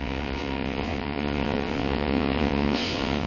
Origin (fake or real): fake